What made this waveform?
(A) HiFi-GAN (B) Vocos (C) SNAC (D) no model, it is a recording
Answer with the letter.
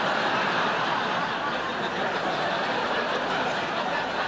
D